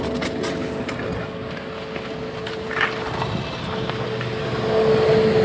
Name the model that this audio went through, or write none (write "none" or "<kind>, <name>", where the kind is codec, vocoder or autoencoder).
none